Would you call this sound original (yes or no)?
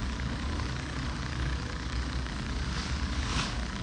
no